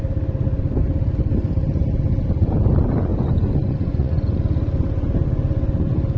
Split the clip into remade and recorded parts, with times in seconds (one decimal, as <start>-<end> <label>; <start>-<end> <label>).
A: 0.0-3.1 recorded; 3.1-4.3 remade; 4.3-6.2 recorded